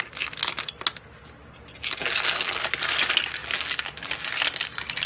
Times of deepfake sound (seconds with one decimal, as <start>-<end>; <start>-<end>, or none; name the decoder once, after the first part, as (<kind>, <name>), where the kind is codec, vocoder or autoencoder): 1.8-2.6 (vocoder, BigVGAN v2); 3.4-4.3